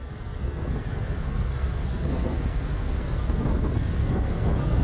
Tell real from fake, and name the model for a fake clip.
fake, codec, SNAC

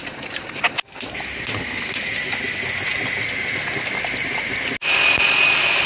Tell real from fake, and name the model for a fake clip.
real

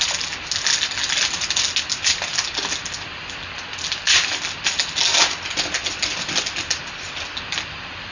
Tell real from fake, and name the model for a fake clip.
real